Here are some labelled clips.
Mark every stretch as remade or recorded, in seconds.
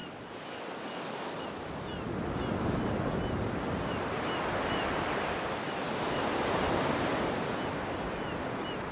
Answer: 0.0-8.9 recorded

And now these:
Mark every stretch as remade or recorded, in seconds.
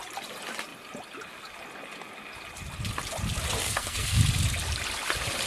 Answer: 0.0-3.6 recorded; 3.6-4.2 remade; 4.2-5.5 recorded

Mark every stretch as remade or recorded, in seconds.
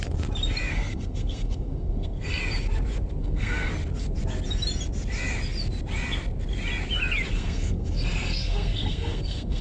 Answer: 0.0-0.7 recorded; 0.7-2.4 remade; 2.4-3.2 recorded; 3.2-3.7 remade; 3.7-7.3 recorded; 7.3-9.6 remade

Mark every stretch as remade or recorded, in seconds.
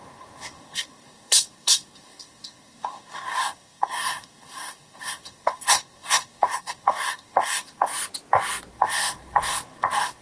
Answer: 0.0-7.9 remade; 7.9-8.7 recorded; 8.7-10.2 remade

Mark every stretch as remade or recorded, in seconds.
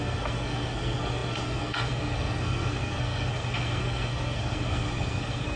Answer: 0.0-5.6 remade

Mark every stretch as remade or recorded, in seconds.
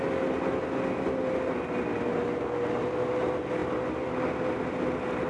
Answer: 0.0-5.3 recorded